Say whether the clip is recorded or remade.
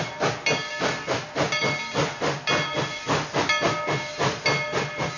recorded